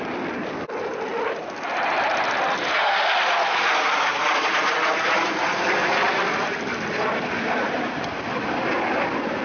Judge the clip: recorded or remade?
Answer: recorded